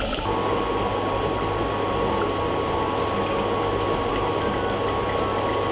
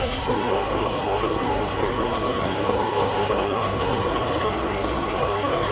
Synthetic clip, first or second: second